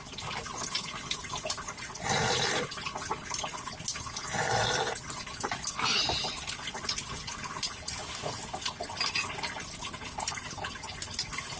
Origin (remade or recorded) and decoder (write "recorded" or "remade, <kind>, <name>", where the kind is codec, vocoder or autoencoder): recorded